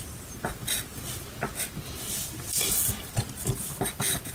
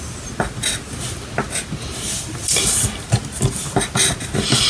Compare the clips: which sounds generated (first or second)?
first